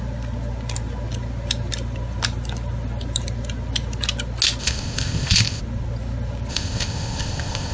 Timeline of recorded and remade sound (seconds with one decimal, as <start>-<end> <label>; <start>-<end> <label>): 0.0-4.6 recorded; 4.6-5.6 remade; 5.6-6.5 recorded; 6.5-7.7 remade